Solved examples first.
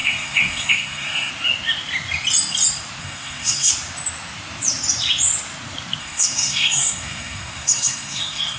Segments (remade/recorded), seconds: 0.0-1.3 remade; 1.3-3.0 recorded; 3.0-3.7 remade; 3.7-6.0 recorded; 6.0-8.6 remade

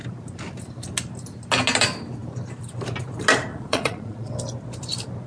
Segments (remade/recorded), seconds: 0.0-3.5 recorded; 3.5-4.3 remade; 4.3-5.3 recorded

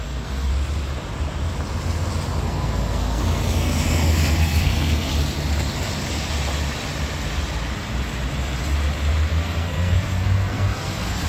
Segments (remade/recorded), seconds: 0.0-0.5 remade; 0.5-2.4 recorded; 2.4-5.1 remade; 5.1-9.3 recorded; 9.3-11.3 remade

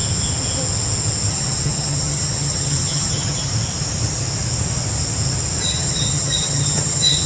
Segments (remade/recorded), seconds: 0.0-1.3 recorded; 1.3-3.5 remade; 3.5-5.6 recorded; 5.6-7.3 remade

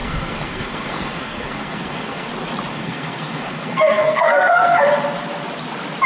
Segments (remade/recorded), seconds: 0.0-2.3 remade; 2.3-2.7 recorded; 2.7-4.8 remade; 4.8-6.1 recorded

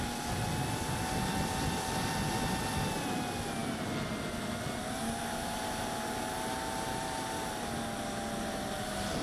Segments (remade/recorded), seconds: 0.0-9.2 recorded

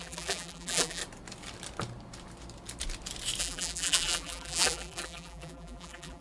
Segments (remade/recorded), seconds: 0.0-1.0 remade; 1.0-3.4 recorded; 3.4-6.2 remade